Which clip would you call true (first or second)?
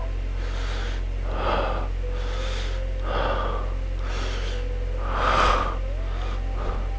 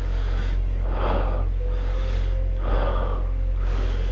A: first